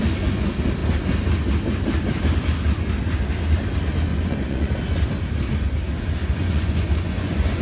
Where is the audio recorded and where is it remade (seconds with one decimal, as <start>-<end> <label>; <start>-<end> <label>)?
0.0-4.1 recorded; 4.1-4.7 remade; 4.7-6.2 recorded; 6.2-7.6 remade